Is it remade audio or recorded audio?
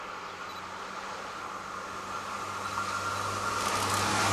recorded